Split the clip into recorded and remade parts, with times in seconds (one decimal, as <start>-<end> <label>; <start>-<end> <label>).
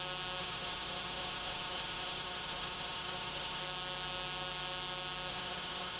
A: 0.0-0.4 recorded; 0.4-3.6 remade; 3.6-5.3 recorded; 5.3-6.0 remade